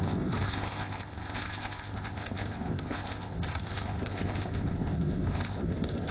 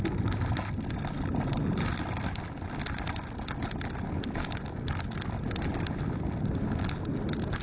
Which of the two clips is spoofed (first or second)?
first